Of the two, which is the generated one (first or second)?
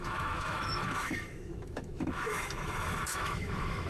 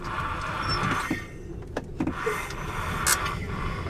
first